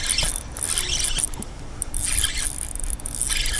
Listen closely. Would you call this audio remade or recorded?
recorded